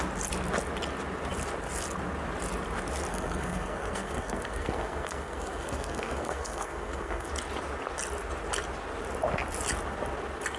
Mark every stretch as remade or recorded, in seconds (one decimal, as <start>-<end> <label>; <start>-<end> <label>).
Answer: 0.0-3.1 recorded; 3.1-7.3 remade; 7.3-10.6 recorded